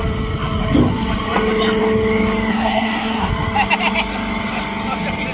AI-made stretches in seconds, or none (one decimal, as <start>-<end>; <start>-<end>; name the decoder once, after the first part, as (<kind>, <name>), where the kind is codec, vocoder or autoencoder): 2.5-3.3 (codec, SNAC)